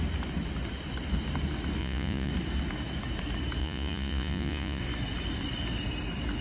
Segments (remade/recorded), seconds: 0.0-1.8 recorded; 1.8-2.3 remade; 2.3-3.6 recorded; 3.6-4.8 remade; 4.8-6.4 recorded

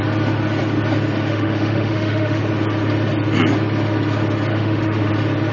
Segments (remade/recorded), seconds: 0.0-1.3 recorded; 1.3-2.4 remade; 2.4-4.5 recorded; 4.5-5.1 remade; 5.1-5.5 recorded

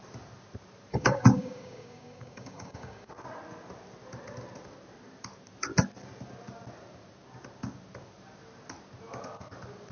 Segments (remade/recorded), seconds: 0.0-0.9 recorded; 0.9-3.1 remade; 3.1-9.9 recorded